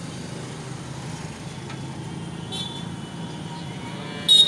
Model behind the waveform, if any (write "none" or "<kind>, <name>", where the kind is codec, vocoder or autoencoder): none